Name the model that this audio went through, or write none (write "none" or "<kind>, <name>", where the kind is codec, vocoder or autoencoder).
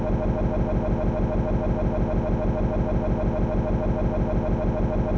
none